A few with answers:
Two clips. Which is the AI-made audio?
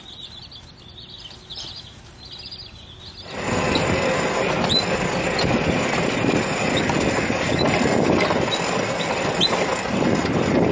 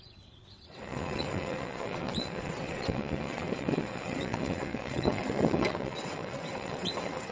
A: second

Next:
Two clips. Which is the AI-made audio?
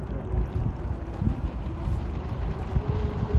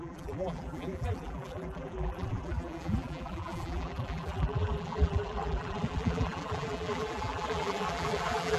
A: second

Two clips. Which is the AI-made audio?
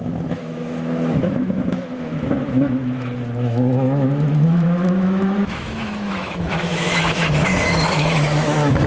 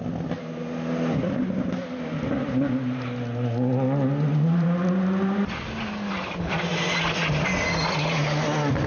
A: first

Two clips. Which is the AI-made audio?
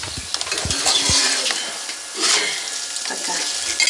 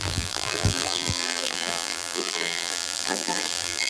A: second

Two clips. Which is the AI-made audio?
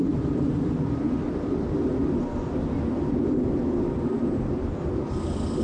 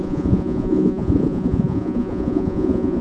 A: second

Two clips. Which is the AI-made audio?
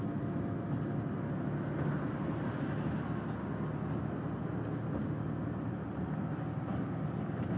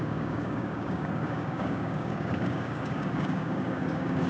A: second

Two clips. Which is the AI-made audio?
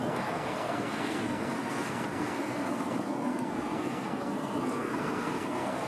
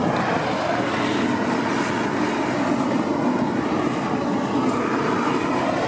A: first